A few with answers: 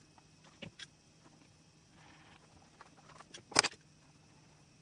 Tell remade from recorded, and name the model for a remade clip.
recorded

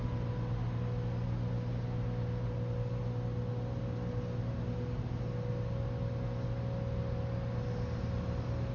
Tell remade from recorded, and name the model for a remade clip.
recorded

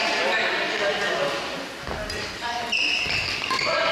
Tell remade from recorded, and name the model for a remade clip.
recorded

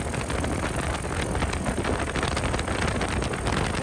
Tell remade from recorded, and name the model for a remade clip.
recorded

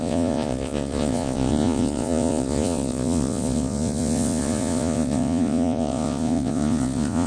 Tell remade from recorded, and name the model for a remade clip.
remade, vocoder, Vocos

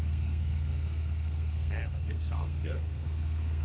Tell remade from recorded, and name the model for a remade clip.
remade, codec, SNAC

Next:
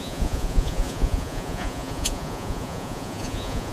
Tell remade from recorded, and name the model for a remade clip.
remade, vocoder, Vocos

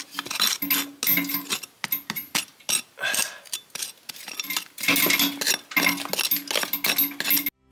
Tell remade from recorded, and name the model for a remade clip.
recorded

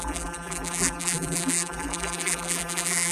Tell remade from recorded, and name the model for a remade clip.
remade, vocoder, BigVGAN v2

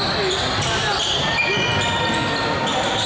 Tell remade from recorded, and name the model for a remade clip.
recorded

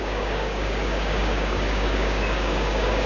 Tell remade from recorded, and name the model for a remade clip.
remade, codec, DAC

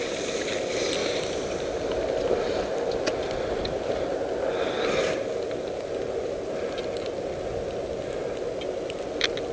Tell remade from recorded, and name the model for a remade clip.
recorded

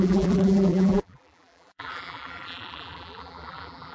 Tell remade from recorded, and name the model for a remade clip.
remade, vocoder, BigVGAN v2